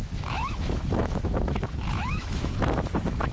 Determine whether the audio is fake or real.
fake